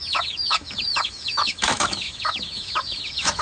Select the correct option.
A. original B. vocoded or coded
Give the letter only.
B